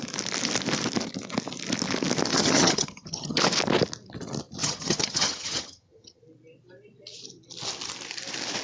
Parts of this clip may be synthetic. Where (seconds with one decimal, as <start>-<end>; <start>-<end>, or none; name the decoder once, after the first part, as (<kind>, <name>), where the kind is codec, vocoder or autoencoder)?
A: 2.3-3.4 (vocoder, HiFi-GAN); 4.6-6.2